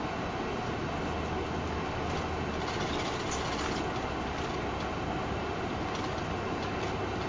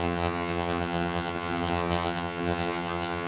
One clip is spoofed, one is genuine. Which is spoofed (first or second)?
second